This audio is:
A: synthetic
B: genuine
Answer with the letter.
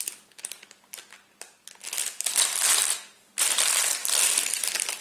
B